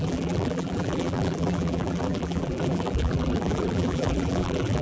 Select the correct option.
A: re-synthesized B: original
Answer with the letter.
A